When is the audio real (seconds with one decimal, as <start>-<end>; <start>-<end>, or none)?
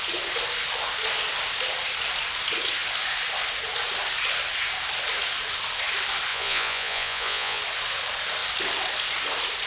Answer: 0.0-6.3; 7.6-9.7